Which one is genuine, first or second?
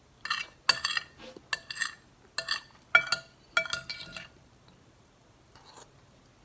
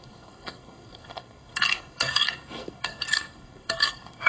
first